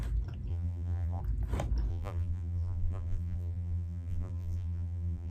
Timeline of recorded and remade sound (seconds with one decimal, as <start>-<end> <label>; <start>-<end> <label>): 0.0-0.5 recorded; 0.5-1.2 remade; 1.2-1.9 recorded; 1.9-5.3 remade